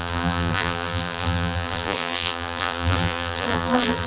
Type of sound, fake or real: fake